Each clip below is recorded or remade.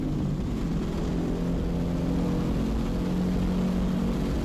recorded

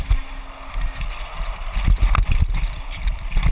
recorded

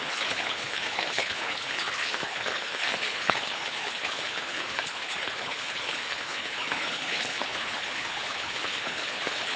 remade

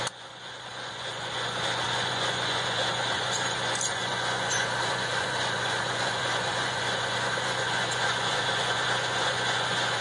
remade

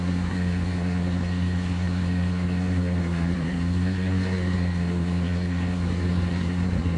remade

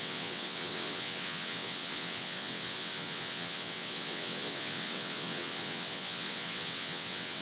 remade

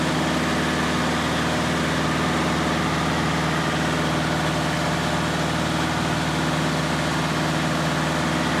recorded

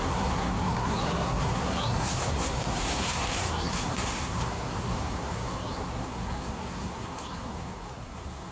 remade